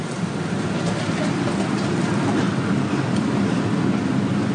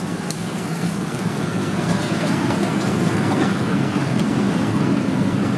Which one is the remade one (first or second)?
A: second